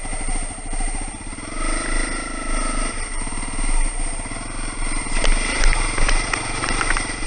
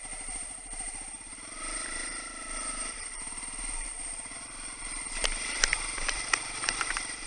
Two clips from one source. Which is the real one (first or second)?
first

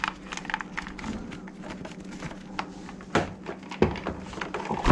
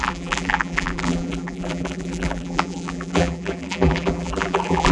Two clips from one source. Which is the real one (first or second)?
first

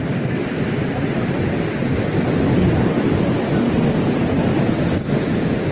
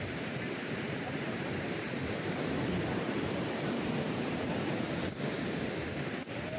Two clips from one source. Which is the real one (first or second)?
first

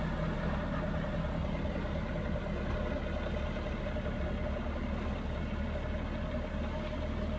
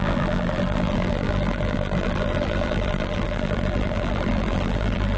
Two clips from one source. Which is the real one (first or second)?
first